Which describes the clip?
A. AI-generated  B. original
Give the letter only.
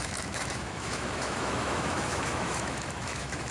A